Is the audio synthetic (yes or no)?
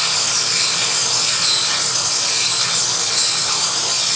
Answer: no